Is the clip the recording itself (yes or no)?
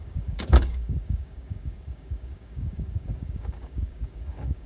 no